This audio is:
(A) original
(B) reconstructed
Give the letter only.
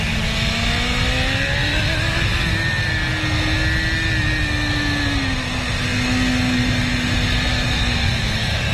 A